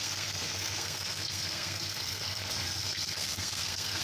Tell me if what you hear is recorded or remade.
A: remade